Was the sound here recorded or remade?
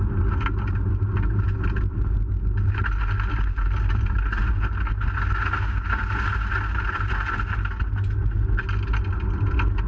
recorded